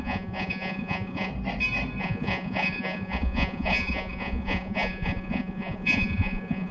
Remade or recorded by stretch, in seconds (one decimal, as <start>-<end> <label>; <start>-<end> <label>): 0.0-1.3 remade; 1.3-2.0 recorded; 2.0-6.7 remade